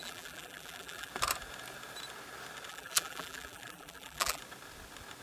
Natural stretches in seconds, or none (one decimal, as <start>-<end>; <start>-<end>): 1.1-2.7; 4.4-5.2